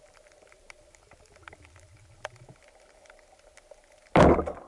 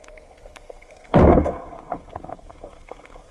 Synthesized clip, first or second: second